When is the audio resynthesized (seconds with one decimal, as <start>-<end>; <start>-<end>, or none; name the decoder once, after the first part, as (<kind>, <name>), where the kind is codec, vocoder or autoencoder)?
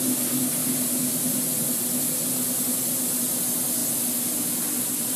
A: none